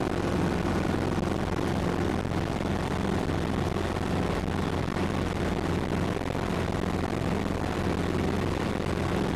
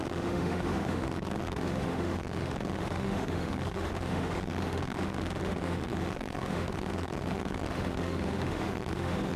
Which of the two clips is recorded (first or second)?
first